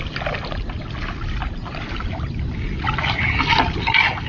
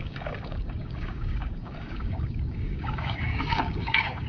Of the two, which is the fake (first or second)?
second